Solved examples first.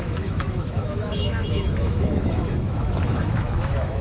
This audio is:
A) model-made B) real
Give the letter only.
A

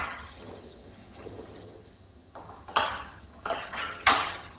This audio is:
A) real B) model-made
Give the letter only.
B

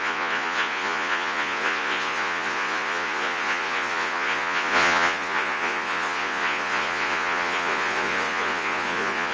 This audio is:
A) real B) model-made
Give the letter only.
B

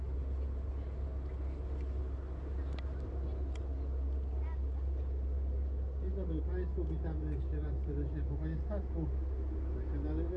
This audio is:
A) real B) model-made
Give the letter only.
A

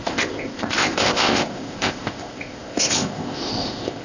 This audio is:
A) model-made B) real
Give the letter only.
A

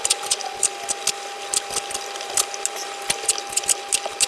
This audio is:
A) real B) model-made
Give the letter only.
A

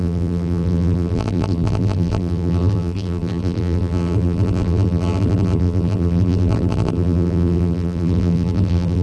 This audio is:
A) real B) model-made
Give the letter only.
B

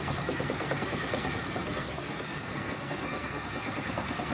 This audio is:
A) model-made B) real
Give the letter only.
A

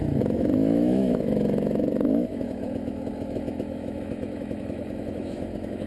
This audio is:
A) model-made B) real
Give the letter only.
A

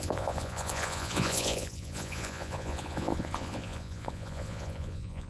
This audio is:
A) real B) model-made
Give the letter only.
B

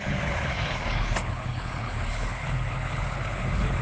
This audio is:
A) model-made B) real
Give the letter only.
A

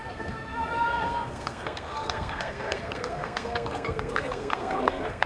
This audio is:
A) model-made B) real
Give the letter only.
A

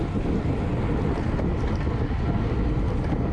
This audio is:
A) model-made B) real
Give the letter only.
B